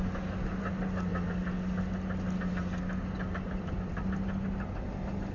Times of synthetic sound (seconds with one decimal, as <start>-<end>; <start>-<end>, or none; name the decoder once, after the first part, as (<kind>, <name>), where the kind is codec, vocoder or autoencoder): none